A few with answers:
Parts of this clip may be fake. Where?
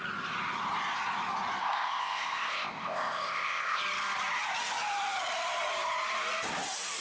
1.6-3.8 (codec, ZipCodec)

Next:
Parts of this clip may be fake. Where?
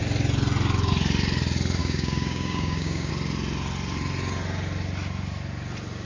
1.8-3.1 (codec, DAC)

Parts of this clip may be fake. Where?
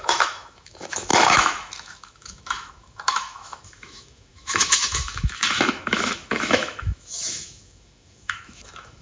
0.0-9.0 (autoencoder, DAC-VAE)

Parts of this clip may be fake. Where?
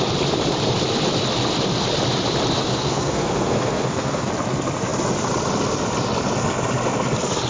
2.7-4.3 (codec, SNAC)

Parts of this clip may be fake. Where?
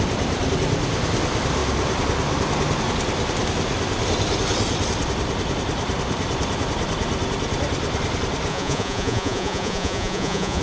8.5-10.6 (vocoder, Vocos)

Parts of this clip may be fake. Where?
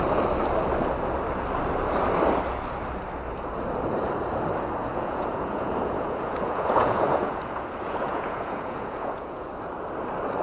4.8-9.5 (vocoder, Vocos)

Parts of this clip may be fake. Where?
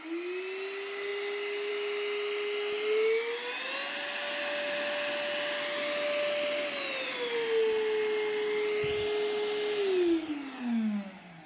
none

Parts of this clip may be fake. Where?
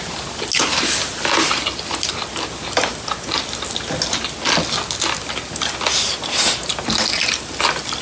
none